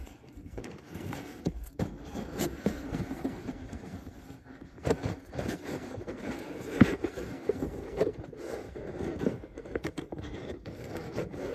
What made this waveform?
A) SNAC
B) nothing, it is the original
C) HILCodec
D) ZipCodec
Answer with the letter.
A